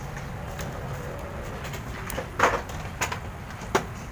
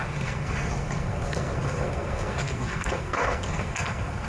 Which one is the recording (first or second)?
first